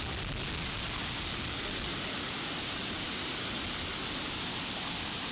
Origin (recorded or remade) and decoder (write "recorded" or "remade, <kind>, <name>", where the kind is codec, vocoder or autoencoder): recorded